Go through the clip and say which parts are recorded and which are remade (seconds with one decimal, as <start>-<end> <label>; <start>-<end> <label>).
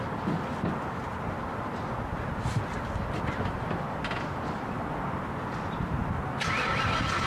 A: 0.0-7.3 recorded